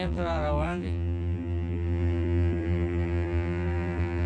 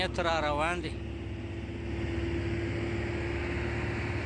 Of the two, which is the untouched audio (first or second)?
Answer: second